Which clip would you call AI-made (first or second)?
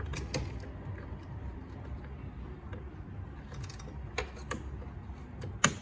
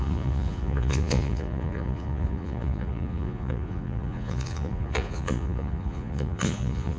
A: second